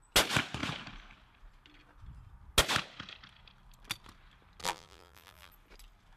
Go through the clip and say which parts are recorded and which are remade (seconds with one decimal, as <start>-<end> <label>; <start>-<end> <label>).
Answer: 0.0-4.6 recorded; 4.6-5.5 remade; 5.5-6.2 recorded